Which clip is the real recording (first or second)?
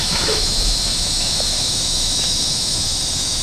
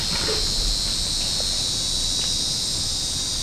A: second